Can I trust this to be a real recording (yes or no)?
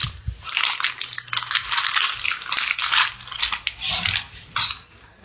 yes